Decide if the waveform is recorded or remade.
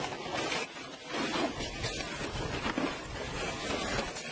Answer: recorded